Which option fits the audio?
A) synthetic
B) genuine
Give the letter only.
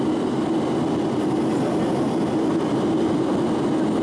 B